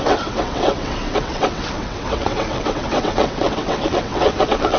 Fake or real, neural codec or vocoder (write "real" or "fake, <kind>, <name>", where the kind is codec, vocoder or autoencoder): fake, vocoder, WaveNeXt